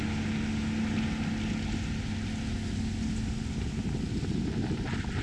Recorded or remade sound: recorded